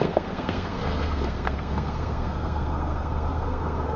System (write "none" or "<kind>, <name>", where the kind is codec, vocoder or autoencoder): codec, SNAC